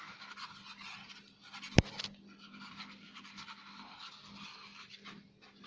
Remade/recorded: recorded